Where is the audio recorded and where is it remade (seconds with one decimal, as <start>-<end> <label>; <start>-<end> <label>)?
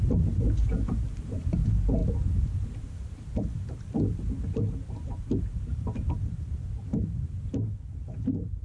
0.0-2.0 remade; 2.0-5.4 recorded; 5.4-8.6 remade